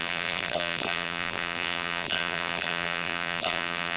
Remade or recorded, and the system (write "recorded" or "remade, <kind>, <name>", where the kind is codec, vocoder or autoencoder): remade, vocoder, BigVGAN v2